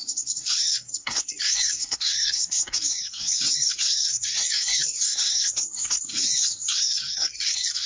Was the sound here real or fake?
fake